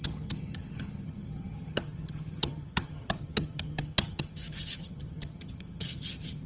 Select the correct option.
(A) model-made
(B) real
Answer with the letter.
A